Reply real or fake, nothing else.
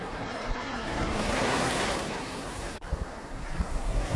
fake